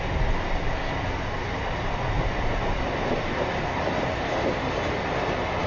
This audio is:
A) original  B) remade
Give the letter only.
A